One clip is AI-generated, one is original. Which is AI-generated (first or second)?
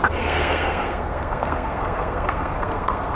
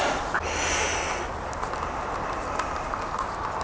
first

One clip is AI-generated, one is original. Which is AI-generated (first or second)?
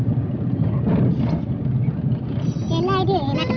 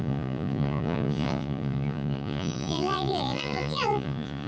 second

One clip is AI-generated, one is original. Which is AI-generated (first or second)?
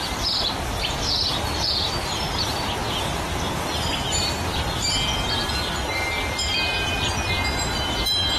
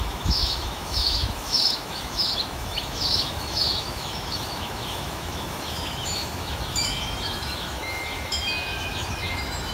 second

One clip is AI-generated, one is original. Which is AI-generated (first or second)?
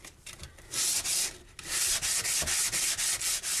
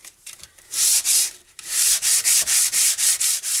second